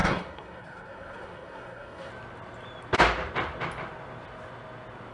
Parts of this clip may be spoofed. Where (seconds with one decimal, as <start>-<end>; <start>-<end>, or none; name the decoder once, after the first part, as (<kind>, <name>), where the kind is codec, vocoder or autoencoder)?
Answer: 0.0-2.1 (codec, SNAC)